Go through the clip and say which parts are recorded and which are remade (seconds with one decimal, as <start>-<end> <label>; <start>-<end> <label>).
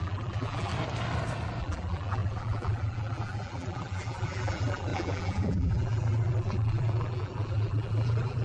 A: 0.0-0.7 remade; 0.7-1.6 recorded; 1.6-8.4 remade